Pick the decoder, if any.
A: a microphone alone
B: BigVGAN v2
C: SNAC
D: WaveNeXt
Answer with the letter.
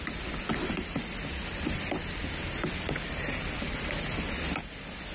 A